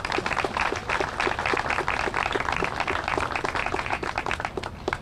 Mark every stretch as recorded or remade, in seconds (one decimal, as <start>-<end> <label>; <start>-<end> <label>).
0.0-3.6 recorded; 3.6-4.1 remade; 4.1-5.0 recorded